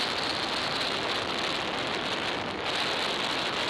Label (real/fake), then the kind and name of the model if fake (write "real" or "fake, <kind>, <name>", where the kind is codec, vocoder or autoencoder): real